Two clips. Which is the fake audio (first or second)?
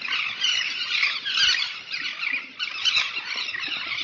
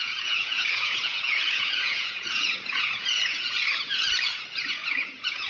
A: second